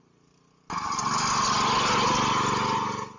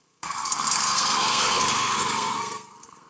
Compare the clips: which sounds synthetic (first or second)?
second